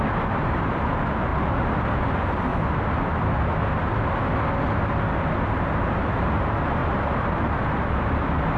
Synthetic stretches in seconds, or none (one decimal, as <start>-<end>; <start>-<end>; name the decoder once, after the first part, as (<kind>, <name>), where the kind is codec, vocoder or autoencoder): 0.0-1.3 (vocoder, BigVGAN v2); 1.8-2.5; 5.9-8.6